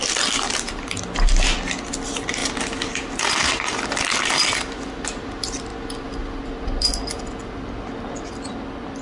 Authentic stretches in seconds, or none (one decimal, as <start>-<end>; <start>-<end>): 0.0-9.0

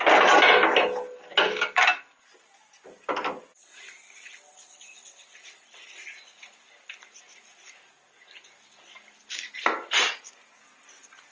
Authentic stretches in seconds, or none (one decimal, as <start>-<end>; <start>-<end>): 0.0-11.3

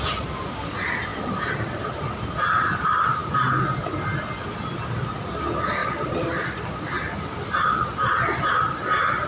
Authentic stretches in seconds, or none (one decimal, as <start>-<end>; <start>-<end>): 0.0-1.1; 2.0-5.8; 8.2-9.3

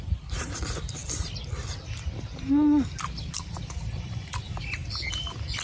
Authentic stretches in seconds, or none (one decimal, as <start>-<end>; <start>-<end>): 1.0-3.6

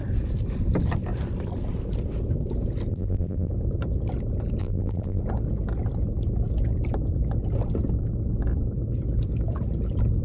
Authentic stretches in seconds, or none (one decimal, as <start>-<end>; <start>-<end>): 0.0-2.9; 3.5-4.6; 5.2-10.2

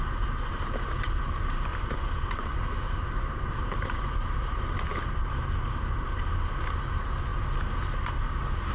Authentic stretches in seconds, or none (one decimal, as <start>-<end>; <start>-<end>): 0.0-1.7; 6.6-8.7

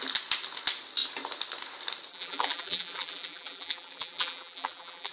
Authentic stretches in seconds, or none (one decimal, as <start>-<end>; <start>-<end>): 0.0-2.1